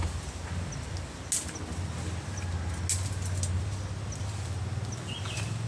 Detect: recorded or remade recorded